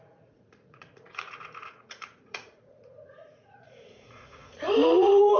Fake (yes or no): yes